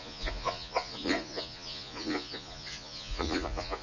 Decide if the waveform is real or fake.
fake